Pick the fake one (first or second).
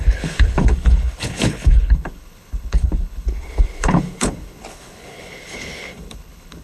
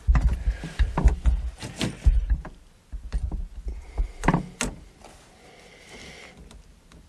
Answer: first